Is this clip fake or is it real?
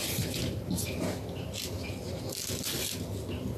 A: real